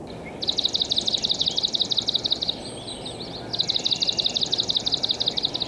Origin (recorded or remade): recorded